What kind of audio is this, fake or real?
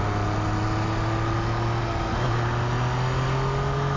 real